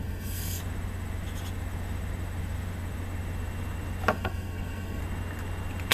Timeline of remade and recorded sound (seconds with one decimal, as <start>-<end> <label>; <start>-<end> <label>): 0.0-0.6 remade; 0.6-4.1 recorded; 4.1-5.0 remade; 5.0-5.9 recorded